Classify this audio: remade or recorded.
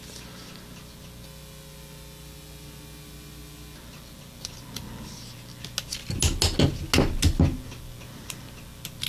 recorded